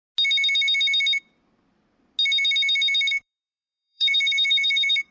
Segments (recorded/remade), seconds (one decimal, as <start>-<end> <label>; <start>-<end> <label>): 0.0-3.1 recorded; 3.1-5.1 remade